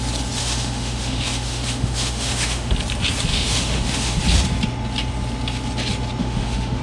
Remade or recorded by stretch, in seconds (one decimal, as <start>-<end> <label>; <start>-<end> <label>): 0.0-0.4 recorded; 0.4-2.7 remade; 2.7-3.3 recorded; 3.3-4.2 remade; 4.2-6.2 recorded; 6.2-6.8 remade